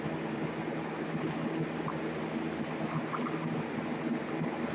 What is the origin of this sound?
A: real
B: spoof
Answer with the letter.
A